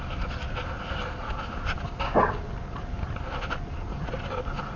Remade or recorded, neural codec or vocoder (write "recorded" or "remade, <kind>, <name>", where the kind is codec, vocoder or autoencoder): recorded